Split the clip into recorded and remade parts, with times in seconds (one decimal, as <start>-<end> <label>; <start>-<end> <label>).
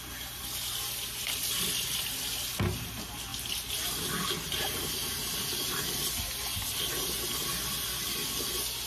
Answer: 0.0-8.9 recorded